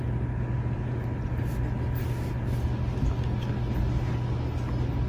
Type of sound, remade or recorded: recorded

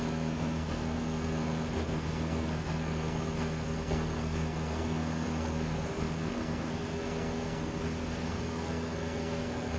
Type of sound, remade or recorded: remade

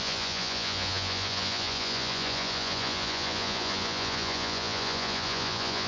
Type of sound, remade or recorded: remade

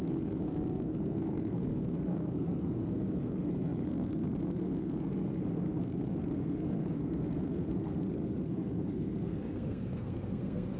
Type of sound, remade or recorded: remade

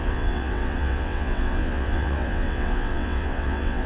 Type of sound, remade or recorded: remade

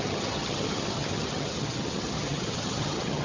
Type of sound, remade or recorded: remade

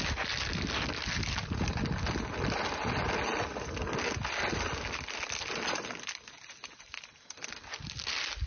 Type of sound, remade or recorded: recorded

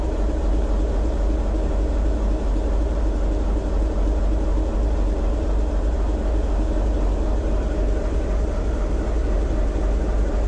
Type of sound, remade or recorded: remade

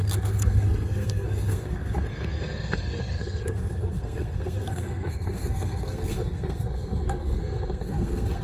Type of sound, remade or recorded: remade